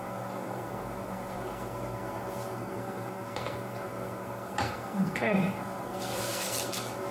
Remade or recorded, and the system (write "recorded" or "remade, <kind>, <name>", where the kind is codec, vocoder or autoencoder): remade, codec, SNAC